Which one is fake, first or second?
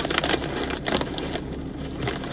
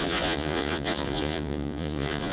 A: second